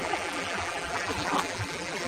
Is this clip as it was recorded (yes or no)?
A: no